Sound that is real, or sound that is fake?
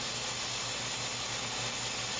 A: real